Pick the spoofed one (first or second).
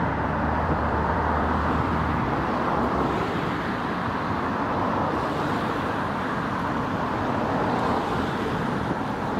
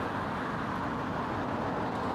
first